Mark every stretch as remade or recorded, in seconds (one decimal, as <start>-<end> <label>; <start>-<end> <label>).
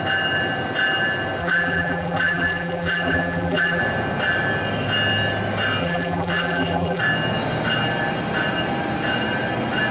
0.0-1.4 recorded; 1.4-3.8 remade; 3.8-5.8 recorded; 5.8-7.0 remade; 7.0-9.9 recorded